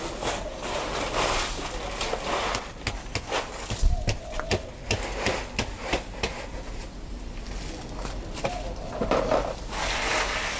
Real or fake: real